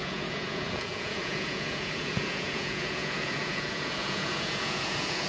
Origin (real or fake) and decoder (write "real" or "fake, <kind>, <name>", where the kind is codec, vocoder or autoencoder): fake, vocoder, Vocos